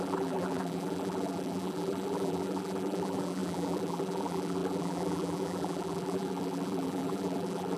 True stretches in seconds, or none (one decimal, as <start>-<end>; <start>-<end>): none